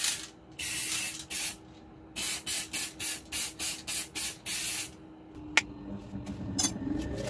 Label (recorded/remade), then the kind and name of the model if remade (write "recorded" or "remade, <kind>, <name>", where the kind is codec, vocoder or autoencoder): recorded